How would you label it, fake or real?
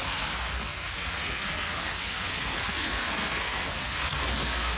fake